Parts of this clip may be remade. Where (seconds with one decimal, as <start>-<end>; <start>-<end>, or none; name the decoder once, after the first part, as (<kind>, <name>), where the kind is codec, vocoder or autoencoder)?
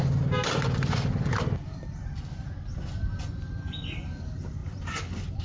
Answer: none